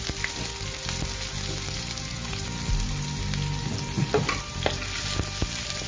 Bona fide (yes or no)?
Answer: yes